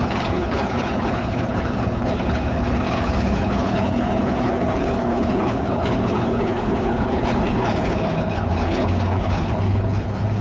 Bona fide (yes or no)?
no